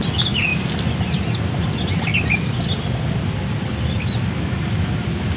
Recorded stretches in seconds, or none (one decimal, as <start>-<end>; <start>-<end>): 0.0-5.4